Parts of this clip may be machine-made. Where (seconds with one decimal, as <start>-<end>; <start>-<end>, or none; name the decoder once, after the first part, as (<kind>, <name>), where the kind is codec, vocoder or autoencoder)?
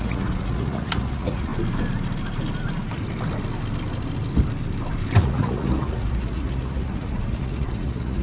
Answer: 0.0-1.5 (vocoder, Vocos); 5.2-8.2